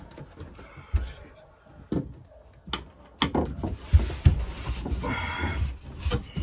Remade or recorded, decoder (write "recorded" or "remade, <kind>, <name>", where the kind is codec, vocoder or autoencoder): recorded